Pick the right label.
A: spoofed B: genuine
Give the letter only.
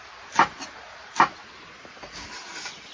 B